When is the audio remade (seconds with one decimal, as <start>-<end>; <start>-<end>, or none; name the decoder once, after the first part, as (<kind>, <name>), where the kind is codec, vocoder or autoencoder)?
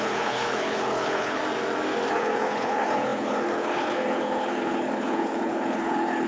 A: 0.0-1.4 (codec, HILCodec); 2.1-6.3